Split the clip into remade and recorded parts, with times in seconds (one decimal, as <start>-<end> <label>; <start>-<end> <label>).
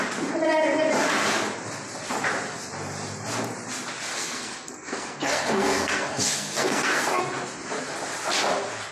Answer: 0.0-4.1 recorded; 4.1-7.2 remade; 7.2-8.9 recorded